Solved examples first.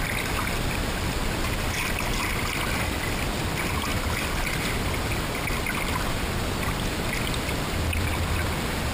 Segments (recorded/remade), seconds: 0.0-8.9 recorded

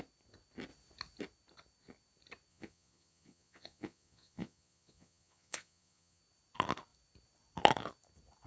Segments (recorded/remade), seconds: 0.0-2.5 recorded; 2.5-6.2 remade; 6.2-8.5 recorded

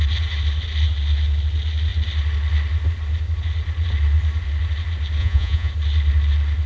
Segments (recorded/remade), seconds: 0.0-5.2 recorded; 5.2-5.7 remade; 5.7-6.7 recorded